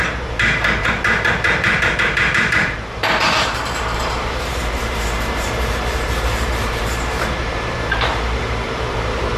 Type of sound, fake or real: fake